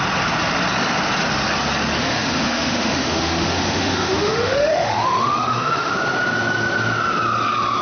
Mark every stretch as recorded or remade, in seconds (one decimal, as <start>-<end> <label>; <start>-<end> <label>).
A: 0.0-2.0 recorded; 2.0-5.9 remade; 5.9-7.8 recorded